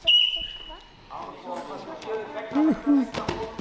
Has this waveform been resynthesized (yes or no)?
no